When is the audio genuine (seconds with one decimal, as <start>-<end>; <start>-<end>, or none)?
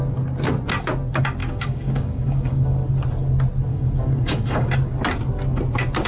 0.0-1.4; 2.9-3.7; 4.7-6.1